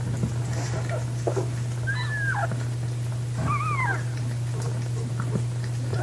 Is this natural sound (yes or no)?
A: yes